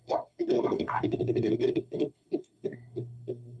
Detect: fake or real fake